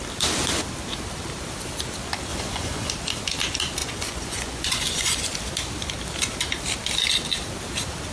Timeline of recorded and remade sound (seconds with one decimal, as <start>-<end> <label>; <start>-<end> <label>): 0.0-2.3 recorded; 2.3-2.9 remade; 2.9-3.8 recorded; 3.8-5.3 remade; 5.3-8.1 recorded